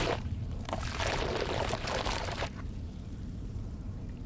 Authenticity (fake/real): fake